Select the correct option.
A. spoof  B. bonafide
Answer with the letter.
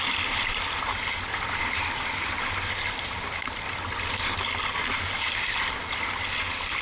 B